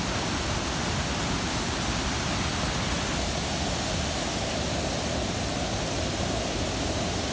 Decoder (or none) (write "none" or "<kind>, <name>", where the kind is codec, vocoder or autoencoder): none